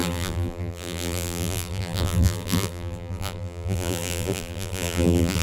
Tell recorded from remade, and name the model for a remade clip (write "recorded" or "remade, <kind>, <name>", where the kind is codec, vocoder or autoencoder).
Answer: remade, vocoder, BigVGAN v2